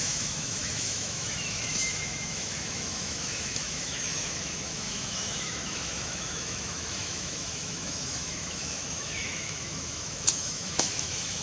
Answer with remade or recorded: remade